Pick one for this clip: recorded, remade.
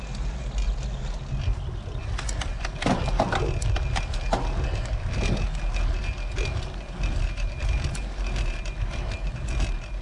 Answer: recorded